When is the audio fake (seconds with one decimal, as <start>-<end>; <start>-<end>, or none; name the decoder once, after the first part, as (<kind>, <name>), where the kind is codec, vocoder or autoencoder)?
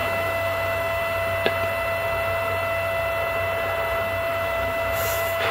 0.0-1.0 (autoencoder, DAC-VAE); 4.3-5.5